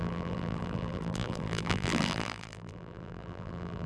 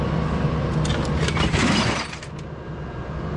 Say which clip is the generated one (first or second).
first